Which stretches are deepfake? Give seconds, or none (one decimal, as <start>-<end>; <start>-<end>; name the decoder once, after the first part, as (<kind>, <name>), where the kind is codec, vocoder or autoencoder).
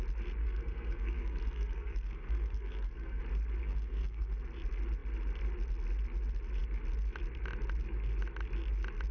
0.4-3.2 (codec, SNAC); 3.6-4.3